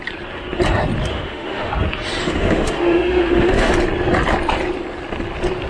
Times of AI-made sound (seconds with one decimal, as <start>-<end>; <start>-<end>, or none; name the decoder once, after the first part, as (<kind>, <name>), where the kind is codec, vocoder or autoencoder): 1.1-1.7 (autoencoder, DAC-VAE); 2.2-3.7